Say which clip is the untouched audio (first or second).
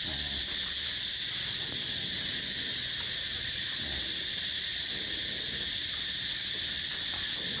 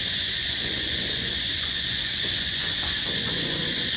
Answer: first